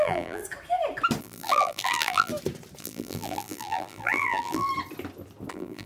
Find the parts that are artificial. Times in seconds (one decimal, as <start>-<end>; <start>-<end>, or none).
0.0-0.4; 1.2-2.3; 2.8-4.7; 5.5-5.9